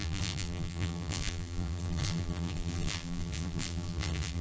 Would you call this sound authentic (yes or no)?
no